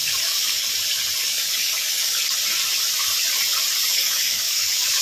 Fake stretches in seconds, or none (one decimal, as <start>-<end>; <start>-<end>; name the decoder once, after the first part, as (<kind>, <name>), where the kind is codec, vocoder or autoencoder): 0.0-0.7 (codec, DAC); 1.2-2.3; 3.9-5.0